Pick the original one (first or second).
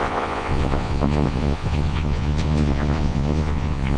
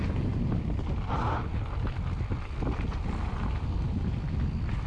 second